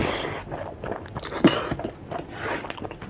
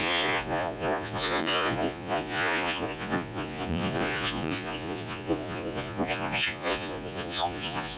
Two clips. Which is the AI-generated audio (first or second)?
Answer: second